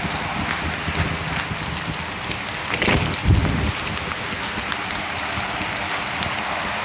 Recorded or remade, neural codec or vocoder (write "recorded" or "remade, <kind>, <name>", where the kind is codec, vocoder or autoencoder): recorded